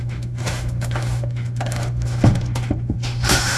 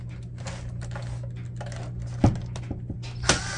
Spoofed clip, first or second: first